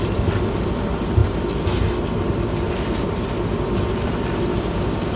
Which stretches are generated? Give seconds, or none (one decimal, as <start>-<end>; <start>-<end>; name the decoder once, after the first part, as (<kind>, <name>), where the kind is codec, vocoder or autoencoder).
4.5-5.2 (codec, DAC)